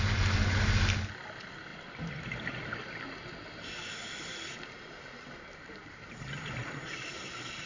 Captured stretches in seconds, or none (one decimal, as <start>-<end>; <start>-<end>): 0.0-7.7